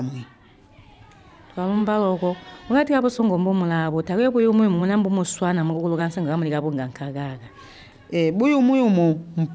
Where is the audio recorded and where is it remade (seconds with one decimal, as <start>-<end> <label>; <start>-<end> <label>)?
0.0-9.5 recorded